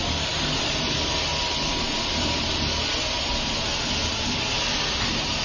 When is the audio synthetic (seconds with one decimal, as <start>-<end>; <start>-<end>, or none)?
none